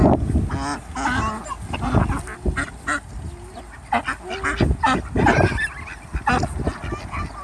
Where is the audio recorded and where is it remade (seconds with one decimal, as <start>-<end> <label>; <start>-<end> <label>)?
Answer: 0.0-7.4 recorded